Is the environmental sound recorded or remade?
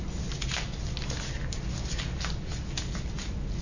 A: recorded